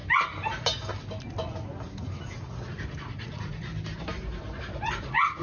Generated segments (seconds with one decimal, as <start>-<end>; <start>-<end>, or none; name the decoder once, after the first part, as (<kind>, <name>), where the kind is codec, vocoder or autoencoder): 3.0-3.7 (vocoder, Vocos); 4.8-5.4